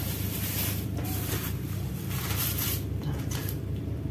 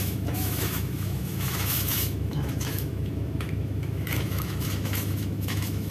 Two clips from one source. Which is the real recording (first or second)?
first